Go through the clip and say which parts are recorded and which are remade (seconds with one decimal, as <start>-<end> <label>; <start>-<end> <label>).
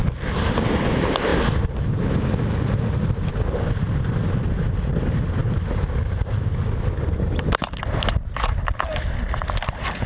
0.0-10.1 recorded